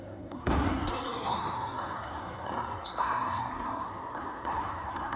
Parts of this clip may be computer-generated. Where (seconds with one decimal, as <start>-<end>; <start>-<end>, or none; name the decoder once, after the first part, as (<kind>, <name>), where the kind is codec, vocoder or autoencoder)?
0.0-5.2 (codec, SNAC)